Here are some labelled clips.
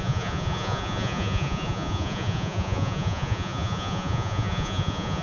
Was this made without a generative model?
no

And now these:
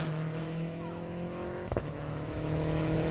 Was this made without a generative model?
no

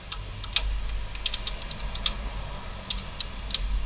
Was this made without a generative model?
yes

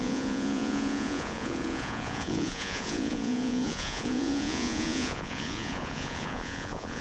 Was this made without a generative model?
no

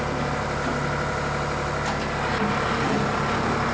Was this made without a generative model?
yes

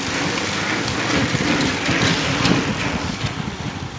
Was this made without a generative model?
no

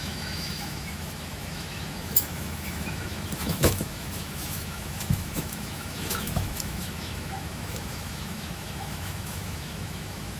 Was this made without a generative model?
no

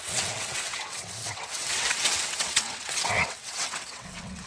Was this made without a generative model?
no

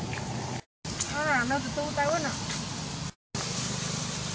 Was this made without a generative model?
yes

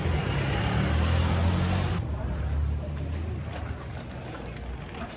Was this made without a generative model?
yes